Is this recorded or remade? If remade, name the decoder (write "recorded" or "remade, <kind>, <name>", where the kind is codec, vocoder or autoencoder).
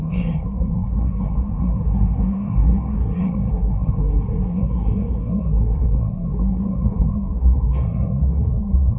remade, codec, SNAC